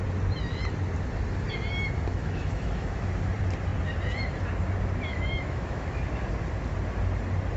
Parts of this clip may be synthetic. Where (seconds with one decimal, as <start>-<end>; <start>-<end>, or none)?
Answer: 2.1-3.1; 5.1-6.0